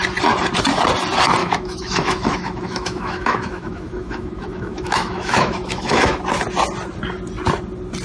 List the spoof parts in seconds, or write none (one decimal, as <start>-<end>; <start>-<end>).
1.4-6.2